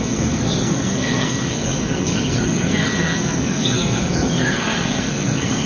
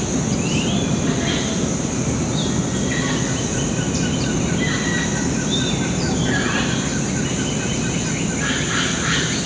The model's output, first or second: first